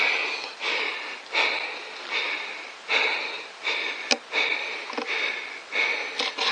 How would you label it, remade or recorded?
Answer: recorded